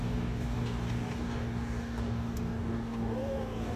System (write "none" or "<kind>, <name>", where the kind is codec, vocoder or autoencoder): codec, DAC